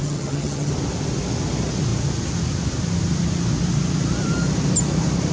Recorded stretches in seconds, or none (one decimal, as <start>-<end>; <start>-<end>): 0.7-5.3